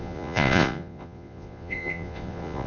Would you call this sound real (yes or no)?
no